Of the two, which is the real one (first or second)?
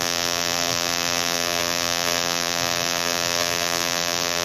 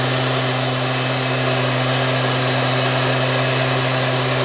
second